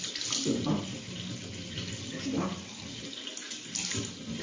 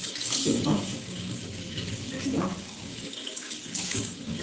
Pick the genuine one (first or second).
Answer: first